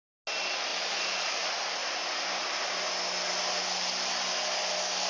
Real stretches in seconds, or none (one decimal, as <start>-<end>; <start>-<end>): 0.0-5.1

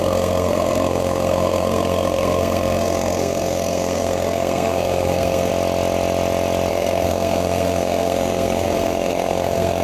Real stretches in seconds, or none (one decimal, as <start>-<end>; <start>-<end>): 5.5-6.7

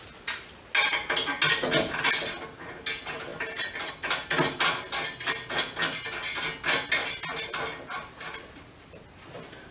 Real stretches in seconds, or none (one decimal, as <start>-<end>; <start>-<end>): 0.0-9.7

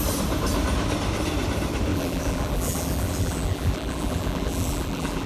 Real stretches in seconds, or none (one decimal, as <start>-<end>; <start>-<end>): 0.0-1.9

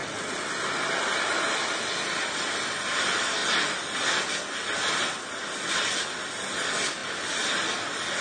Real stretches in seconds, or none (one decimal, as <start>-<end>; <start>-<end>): 0.0-8.2

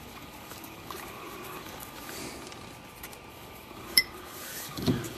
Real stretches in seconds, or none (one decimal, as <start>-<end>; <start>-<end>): 2.2-3.3